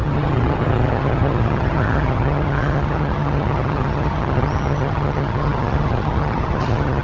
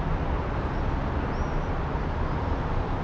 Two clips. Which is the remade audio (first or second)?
first